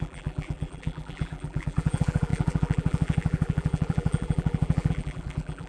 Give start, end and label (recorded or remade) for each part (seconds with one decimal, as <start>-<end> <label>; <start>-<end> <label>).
0.0-5.7 remade